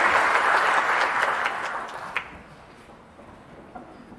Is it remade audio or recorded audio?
recorded